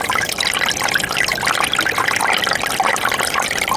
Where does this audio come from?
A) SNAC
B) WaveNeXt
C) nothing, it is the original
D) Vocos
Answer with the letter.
C